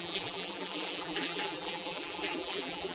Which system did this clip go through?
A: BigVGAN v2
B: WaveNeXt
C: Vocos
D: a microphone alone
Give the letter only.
A